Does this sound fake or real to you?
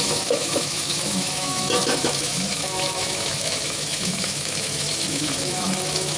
fake